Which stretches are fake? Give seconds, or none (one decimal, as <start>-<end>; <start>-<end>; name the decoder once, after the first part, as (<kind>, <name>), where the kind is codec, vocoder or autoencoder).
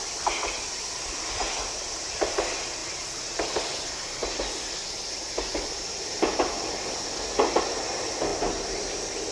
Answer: none